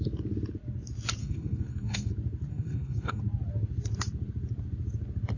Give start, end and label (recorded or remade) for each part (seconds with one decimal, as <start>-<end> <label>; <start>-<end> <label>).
0.0-1.2 recorded; 1.2-2.1 remade; 2.1-2.5 recorded; 2.5-3.2 remade; 3.2-5.4 recorded